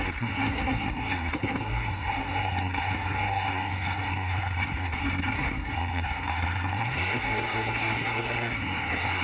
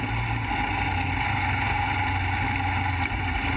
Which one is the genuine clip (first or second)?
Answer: second